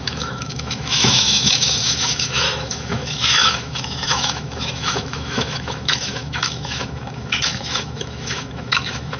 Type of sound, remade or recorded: remade